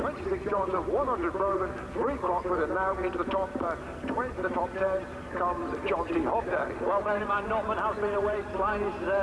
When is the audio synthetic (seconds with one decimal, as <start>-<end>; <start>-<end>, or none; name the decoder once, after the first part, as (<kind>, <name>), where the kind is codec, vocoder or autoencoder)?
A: none